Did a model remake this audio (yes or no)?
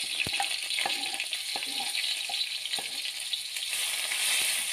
no